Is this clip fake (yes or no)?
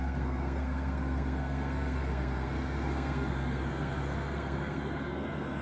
yes